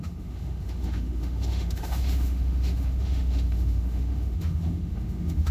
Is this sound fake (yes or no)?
yes